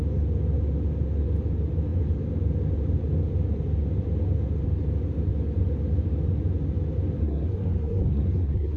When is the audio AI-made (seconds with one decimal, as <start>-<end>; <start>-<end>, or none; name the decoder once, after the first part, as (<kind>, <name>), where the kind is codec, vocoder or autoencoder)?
7.2-8.8 (codec, SNAC)